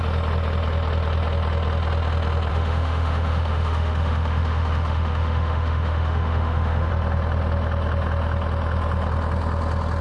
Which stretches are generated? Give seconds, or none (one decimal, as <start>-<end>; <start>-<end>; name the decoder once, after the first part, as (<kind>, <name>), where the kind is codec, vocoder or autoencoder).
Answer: 2.5-6.9 (autoencoder, DAC-VAE)